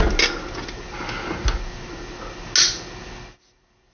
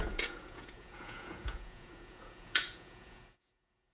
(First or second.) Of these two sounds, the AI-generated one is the second